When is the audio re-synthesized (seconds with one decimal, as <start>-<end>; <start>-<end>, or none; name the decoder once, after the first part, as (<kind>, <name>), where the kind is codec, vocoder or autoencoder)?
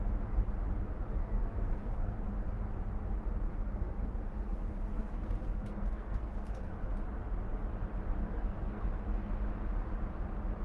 1.1-2.3 (codec, SNAC); 3.5-6.7; 8.2-9.3